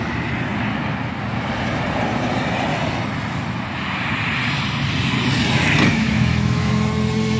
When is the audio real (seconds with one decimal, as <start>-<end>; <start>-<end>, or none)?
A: 0.0-5.9; 6.7-7.4